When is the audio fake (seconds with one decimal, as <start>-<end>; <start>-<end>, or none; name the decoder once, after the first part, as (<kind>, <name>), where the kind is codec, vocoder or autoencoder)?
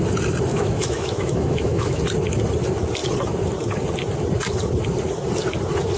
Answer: 0.5-2.0 (autoencoder, DAC-VAE)